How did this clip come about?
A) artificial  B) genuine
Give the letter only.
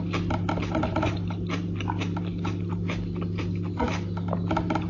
B